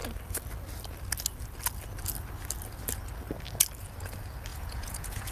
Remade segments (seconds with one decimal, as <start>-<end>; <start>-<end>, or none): 4.5-5.3